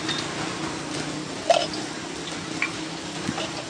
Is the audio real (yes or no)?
yes